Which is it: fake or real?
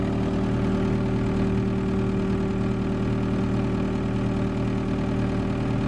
real